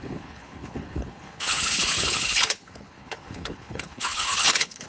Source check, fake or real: fake